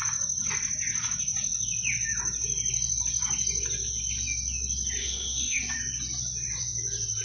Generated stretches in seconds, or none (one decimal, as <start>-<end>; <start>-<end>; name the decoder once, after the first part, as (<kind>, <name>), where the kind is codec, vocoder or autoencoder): 5.0-5.6 (codec, DAC)